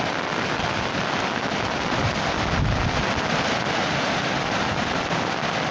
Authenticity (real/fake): real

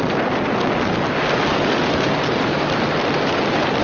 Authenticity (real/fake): real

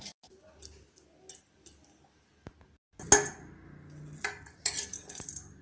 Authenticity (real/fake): real